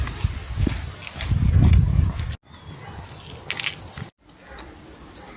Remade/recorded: recorded